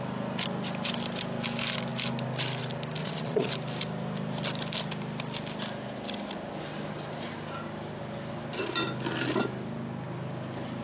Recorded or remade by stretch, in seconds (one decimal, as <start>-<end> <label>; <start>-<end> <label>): 0.0-3.0 recorded; 3.0-3.5 remade; 3.5-10.8 recorded